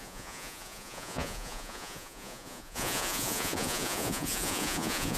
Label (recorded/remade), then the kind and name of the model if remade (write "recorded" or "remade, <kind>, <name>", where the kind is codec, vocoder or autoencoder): remade, vocoder, Vocos